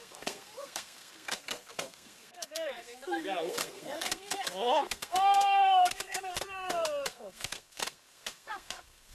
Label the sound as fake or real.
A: fake